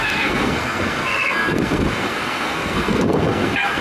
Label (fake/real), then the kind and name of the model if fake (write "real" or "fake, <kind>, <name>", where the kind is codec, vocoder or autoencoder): fake, codec, SNAC